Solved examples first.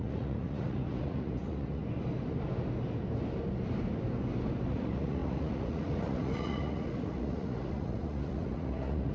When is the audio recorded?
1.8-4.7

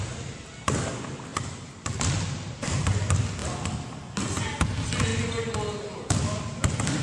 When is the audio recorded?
0.0-7.0